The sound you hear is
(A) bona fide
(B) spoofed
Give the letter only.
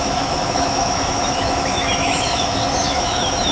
B